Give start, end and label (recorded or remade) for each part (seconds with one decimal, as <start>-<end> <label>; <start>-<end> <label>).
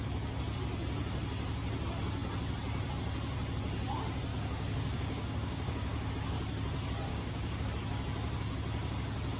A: 0.0-4.3 recorded; 4.3-6.1 remade; 6.1-7.1 recorded; 7.1-7.7 remade; 7.7-9.4 recorded